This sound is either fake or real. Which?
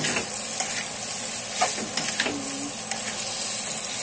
real